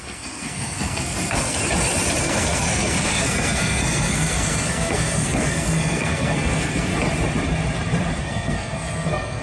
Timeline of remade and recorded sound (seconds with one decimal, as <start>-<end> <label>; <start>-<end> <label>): 0.0-1.6 remade; 1.6-2.2 recorded; 2.2-6.9 remade; 6.9-8.2 recorded; 8.2-9.4 remade